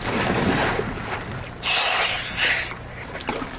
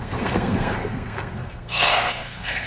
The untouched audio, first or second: first